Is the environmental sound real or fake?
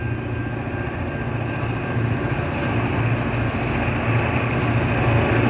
real